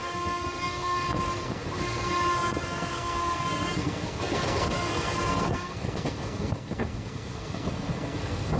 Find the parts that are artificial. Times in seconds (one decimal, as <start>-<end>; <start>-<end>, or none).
0.0-8.6